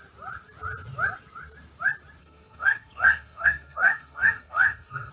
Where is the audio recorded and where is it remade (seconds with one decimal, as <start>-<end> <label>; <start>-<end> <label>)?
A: 0.0-2.2 recorded; 2.2-5.1 remade